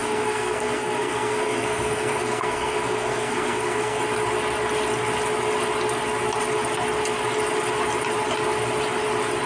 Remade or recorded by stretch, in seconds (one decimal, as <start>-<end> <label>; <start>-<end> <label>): 0.0-4.0 remade; 4.0-9.5 recorded